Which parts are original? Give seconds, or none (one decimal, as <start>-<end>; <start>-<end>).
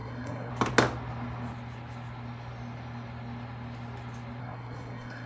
0.5-4.4